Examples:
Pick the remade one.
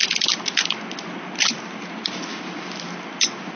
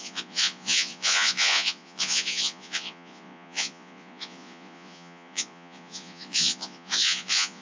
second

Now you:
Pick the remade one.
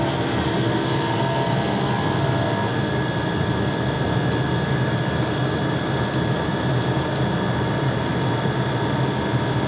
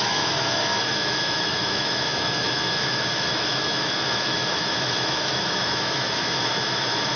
second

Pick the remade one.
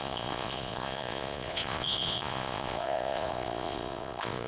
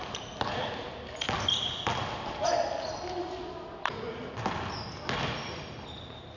first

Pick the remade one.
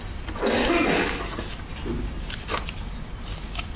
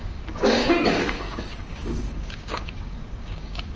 second